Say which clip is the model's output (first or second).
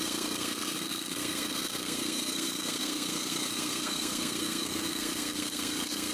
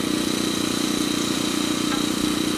first